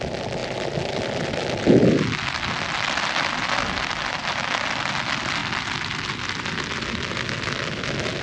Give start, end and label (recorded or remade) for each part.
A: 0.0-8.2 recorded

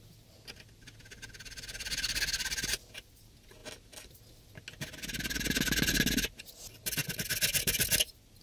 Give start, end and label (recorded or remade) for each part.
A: 0.0-8.4 recorded

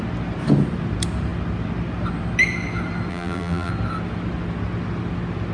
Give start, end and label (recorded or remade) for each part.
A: 0.0-3.1 recorded; 3.1-3.7 remade; 3.7-5.5 recorded

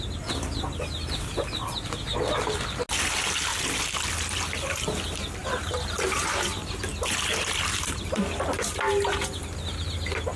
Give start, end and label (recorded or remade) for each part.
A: 0.0-3.5 recorded; 3.5-4.1 remade; 4.1-5.4 recorded; 5.4-6.2 remade; 6.2-6.9 recorded; 6.9-8.2 remade; 8.2-10.4 recorded

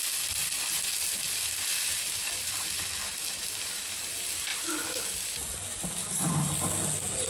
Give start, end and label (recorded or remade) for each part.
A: 0.0-0.4 recorded; 0.4-1.0 remade; 1.0-1.7 recorded; 1.7-2.9 remade; 2.9-7.3 recorded